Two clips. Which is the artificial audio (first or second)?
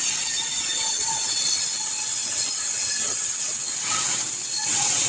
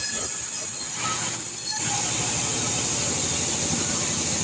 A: first